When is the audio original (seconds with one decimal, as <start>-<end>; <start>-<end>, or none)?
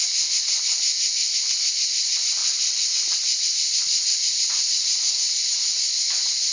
0.0-2.4